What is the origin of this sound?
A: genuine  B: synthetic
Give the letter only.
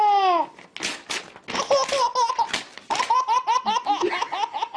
A